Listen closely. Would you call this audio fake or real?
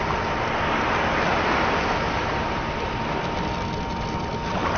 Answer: real